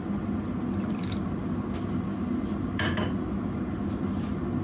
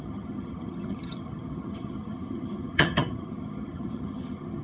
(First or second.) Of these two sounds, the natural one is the first